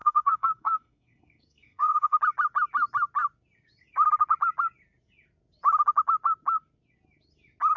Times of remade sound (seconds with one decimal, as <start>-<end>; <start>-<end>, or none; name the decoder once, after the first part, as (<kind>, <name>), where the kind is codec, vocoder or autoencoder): 0.0-2.2 (codec, SNAC)

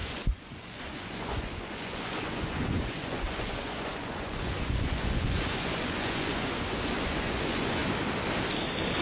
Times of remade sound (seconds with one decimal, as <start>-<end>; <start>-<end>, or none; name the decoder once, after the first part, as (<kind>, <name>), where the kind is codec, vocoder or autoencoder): 0.0-7.8 (vocoder, Vocos)